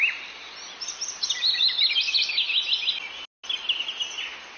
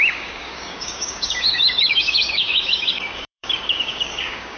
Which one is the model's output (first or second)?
second